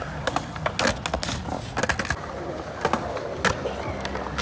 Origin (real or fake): real